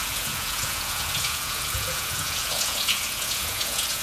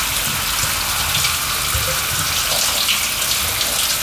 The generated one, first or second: first